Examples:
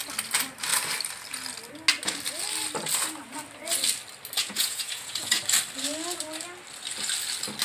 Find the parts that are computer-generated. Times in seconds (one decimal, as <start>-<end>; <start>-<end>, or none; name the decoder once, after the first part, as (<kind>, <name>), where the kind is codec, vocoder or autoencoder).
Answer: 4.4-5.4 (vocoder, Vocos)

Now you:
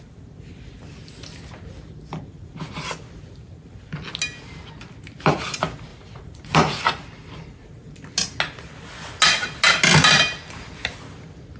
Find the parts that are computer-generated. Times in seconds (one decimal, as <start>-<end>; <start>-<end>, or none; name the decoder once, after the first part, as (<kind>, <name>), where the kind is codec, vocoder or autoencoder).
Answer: 5.9-6.8 (vocoder, Vocos)

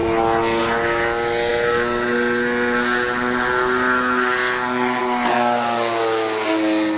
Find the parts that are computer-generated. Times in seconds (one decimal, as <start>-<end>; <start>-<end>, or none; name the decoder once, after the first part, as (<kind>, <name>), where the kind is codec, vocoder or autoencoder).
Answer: none